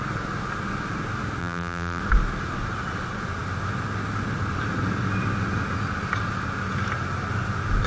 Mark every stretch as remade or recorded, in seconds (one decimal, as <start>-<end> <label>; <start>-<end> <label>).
0.0-1.4 recorded; 1.4-2.0 remade; 2.0-7.9 recorded